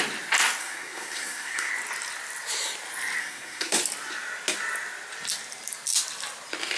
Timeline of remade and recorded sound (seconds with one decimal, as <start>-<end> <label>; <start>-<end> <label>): 0.0-0.6 recorded; 0.6-1.7 remade; 1.7-3.2 recorded; 3.2-3.8 remade; 3.8-6.8 recorded